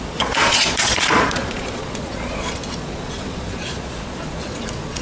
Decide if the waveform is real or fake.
fake